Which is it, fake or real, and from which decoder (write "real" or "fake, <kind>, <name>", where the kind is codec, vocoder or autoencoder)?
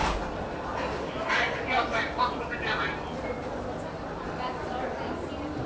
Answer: real